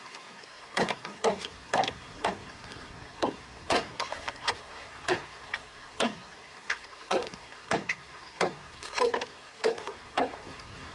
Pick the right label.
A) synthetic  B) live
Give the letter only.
A